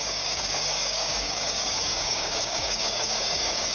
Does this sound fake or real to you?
fake